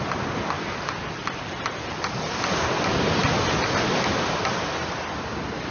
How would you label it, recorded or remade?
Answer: recorded